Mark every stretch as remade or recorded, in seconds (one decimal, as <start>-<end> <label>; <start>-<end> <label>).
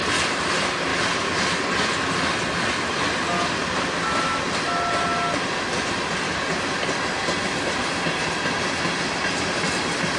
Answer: 0.0-10.2 recorded